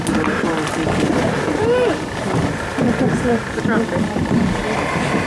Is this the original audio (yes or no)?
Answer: yes